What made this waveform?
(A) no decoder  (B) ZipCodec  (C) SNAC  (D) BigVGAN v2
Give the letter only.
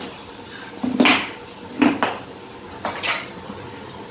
A